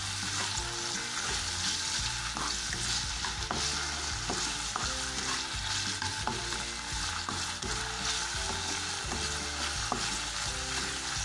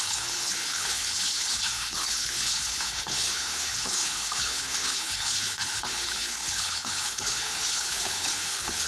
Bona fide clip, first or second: first